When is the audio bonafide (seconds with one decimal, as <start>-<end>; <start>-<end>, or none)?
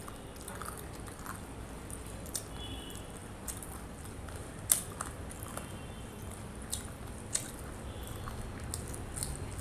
0.0-3.2; 7.2-9.6